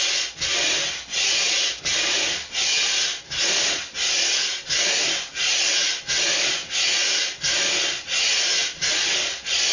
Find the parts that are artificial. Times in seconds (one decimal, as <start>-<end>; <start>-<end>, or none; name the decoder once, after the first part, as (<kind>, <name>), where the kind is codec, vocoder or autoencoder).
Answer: none